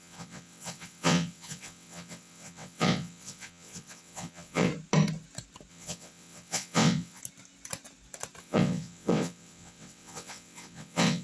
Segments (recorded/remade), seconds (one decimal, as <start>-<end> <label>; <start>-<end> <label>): 0.0-4.7 remade; 4.7-5.7 recorded; 5.7-7.2 remade; 7.2-8.4 recorded; 8.4-11.2 remade